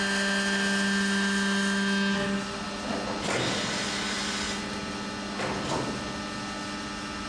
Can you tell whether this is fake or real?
real